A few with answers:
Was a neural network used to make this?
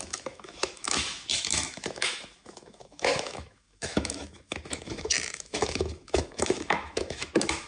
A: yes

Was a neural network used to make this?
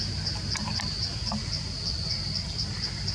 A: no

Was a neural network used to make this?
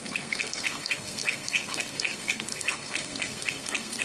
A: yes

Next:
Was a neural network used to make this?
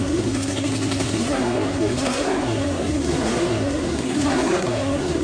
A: yes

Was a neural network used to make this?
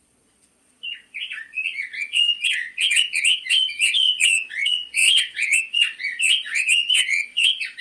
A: yes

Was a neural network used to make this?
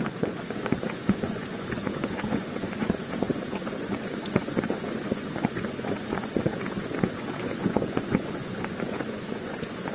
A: yes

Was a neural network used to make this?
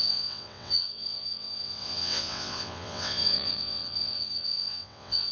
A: yes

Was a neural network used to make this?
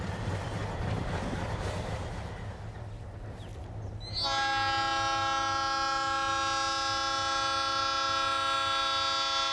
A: no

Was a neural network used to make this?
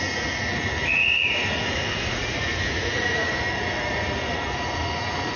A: yes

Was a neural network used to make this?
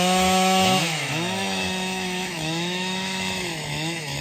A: yes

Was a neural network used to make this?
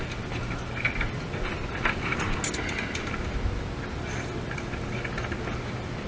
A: no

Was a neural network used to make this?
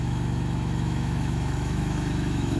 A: yes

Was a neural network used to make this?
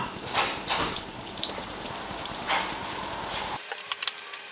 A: yes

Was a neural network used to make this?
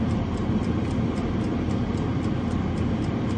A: no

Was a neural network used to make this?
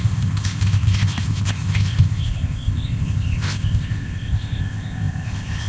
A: yes